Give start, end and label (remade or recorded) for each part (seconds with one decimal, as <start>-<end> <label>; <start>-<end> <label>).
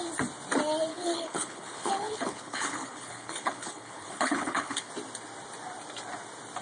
0.0-0.9 recorded; 0.9-4.9 remade; 4.9-6.6 recorded